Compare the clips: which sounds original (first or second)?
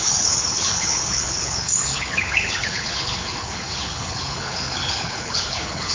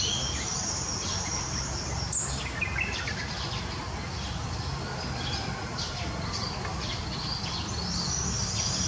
second